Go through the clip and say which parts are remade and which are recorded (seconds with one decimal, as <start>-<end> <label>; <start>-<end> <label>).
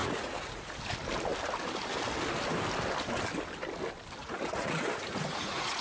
0.0-0.7 remade; 0.7-4.2 recorded; 4.2-5.8 remade